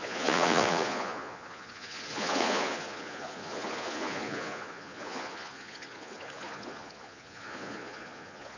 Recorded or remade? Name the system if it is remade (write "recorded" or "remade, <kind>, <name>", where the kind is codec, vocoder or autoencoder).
remade, vocoder, Vocos